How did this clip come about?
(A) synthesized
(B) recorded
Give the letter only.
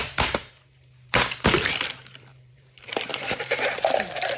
A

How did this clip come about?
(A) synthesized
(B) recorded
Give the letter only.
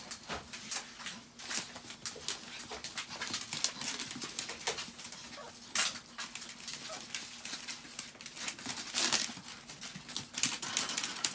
B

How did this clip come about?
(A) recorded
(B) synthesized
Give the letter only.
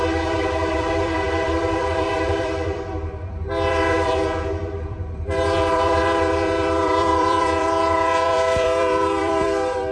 B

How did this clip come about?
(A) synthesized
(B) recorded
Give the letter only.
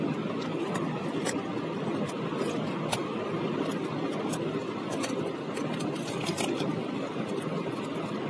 B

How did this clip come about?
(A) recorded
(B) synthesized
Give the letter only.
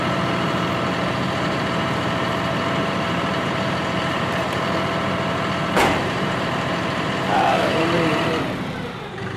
B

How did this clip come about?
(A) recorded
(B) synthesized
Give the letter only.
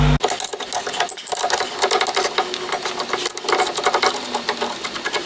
A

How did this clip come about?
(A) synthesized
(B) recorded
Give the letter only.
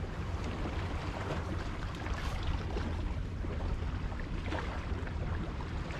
A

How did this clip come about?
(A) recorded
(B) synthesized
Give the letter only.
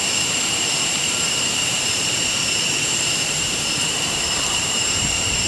B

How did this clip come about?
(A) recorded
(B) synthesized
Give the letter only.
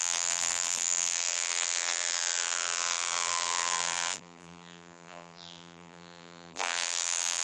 B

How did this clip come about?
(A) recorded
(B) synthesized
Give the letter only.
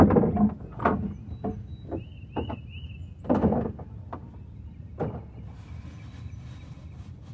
A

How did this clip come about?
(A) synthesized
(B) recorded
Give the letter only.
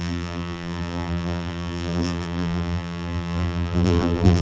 A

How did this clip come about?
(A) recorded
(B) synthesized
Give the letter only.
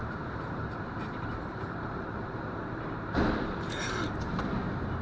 B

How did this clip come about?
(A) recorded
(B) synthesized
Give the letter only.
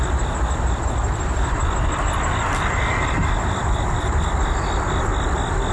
B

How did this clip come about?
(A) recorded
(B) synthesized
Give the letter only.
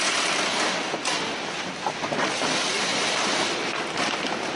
A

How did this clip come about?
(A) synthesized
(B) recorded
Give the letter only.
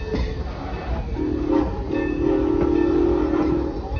B